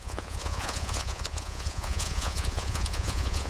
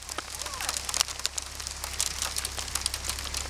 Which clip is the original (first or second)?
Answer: second